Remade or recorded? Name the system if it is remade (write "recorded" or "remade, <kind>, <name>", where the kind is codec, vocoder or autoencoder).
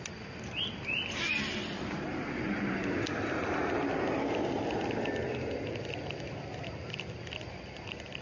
recorded